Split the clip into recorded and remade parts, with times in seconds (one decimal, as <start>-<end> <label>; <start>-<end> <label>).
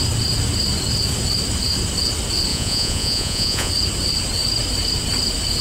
0.0-2.5 recorded; 2.5-3.7 remade; 3.7-5.6 recorded